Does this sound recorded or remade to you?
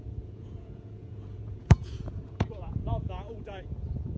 remade